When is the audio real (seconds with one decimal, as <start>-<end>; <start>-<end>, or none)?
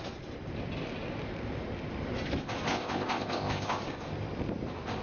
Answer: 0.0-2.7; 3.8-5.0